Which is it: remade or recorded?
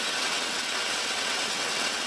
remade